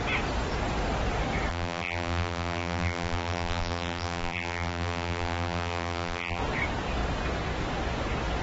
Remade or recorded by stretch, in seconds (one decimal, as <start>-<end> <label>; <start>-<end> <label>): 0.0-1.5 recorded; 1.5-6.4 remade; 6.4-8.4 recorded